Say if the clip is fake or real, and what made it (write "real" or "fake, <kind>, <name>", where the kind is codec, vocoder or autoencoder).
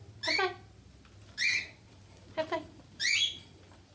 real